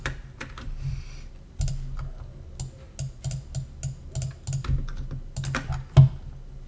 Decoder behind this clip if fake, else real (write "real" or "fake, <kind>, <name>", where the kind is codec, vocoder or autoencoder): real